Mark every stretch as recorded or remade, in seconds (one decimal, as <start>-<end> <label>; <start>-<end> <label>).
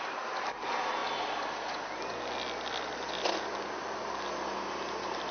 0.0-5.3 recorded